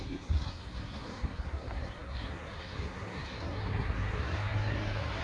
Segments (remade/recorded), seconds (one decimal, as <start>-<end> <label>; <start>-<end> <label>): 0.0-5.2 remade